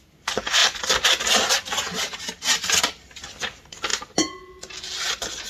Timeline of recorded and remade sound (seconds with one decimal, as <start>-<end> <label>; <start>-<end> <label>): 0.0-5.5 recorded